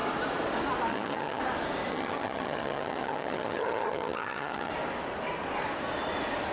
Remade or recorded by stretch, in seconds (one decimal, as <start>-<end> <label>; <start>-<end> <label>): 0.0-0.9 recorded; 0.9-1.4 remade; 1.4-1.9 recorded; 1.9-4.7 remade; 4.7-6.5 recorded